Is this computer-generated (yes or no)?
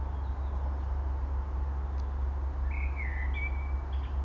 no